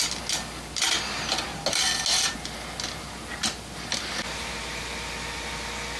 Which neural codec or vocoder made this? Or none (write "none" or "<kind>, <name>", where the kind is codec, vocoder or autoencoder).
none